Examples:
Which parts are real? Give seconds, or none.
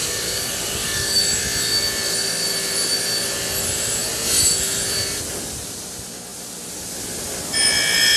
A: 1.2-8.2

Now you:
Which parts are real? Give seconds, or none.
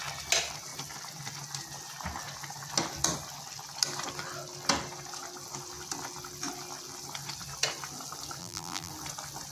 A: 0.0-8.4; 8.9-9.5